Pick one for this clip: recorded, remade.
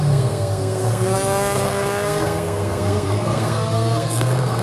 remade